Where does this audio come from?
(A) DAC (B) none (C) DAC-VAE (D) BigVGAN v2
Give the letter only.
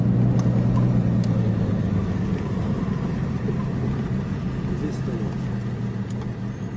B